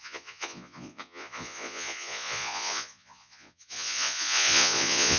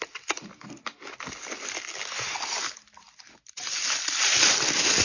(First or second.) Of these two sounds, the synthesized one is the first